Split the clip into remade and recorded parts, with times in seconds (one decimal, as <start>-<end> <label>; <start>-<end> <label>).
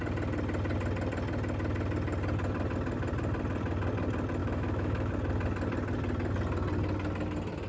0.0-4.4 recorded; 4.4-5.1 remade; 5.1-7.7 recorded